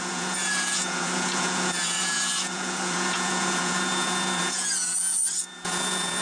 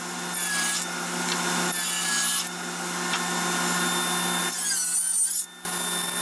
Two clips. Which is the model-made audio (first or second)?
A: first